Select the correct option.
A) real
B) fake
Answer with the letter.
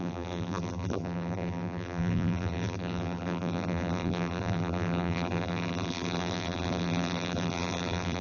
B